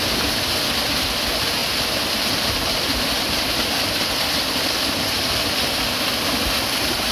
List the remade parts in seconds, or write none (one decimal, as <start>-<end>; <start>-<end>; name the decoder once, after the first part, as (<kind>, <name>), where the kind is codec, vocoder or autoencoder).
none